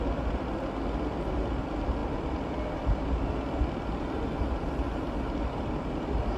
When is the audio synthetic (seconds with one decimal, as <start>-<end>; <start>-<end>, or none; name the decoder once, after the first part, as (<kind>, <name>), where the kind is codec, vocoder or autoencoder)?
none